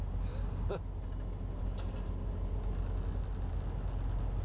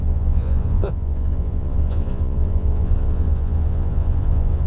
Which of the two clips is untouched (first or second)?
first